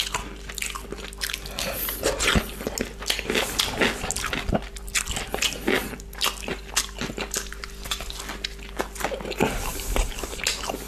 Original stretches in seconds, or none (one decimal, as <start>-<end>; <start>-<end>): 0.0-10.9